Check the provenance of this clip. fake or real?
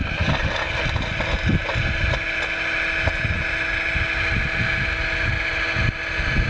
real